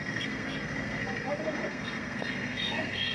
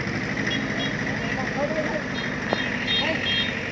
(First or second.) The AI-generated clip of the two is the first